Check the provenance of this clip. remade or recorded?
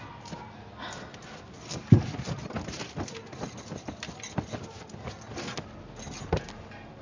recorded